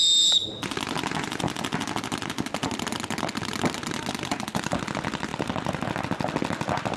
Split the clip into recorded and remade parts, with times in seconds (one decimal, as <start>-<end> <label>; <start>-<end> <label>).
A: 0.0-7.0 recorded